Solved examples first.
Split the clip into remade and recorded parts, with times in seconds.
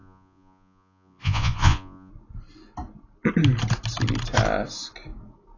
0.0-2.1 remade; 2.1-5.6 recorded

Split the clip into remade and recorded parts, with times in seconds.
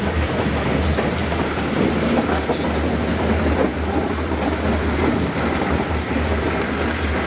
0.0-7.3 recorded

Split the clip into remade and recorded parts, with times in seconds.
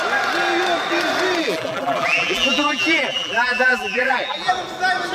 0.0-1.4 recorded; 1.4-4.5 remade; 4.5-5.1 recorded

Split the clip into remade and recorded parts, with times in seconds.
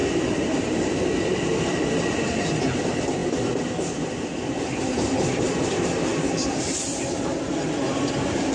0.0-3.2 remade; 3.2-4.1 recorded; 4.1-8.5 remade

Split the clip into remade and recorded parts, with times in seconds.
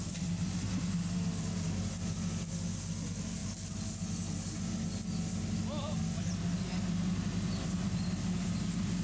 0.0-9.0 recorded